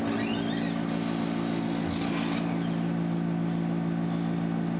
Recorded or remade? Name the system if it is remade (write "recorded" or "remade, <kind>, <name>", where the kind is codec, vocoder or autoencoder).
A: recorded